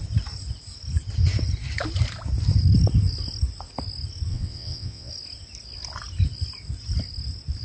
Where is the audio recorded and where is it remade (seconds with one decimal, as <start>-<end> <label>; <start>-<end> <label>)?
0.0-4.3 recorded; 4.3-5.1 remade; 5.1-7.6 recorded